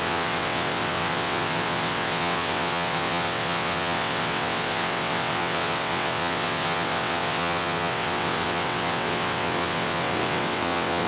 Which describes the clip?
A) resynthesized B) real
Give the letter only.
A